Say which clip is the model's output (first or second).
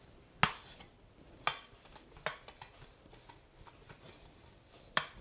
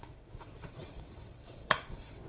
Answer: second